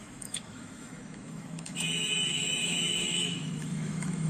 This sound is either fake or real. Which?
fake